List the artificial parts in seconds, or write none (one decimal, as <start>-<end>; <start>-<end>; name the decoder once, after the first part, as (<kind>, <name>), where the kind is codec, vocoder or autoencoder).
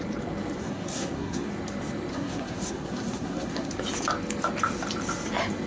0.6-1.5 (codec, SNAC); 2.1-3.7